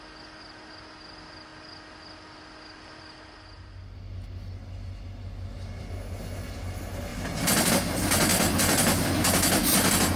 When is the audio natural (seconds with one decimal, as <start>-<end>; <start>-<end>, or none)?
0.0-7.1; 7.7-8.3; 9.1-10.2